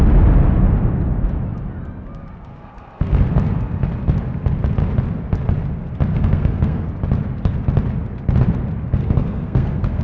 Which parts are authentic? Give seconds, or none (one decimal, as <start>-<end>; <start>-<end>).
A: 0.0-2.5; 3.2-6.1; 6.9-9.0